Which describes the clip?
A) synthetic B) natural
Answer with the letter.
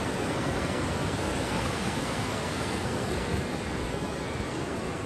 A